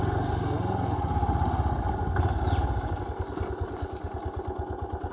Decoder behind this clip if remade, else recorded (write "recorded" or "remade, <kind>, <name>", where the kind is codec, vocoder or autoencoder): recorded